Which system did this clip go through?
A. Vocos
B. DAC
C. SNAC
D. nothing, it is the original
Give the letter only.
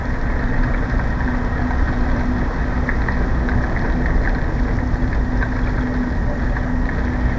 D